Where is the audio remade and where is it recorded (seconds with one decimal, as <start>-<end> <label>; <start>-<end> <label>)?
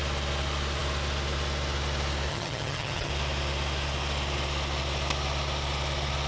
0.0-2.3 recorded; 2.3-3.1 remade; 3.1-6.3 recorded